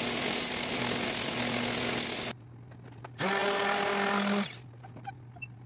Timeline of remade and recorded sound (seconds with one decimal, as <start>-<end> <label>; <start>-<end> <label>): 0.0-5.7 recorded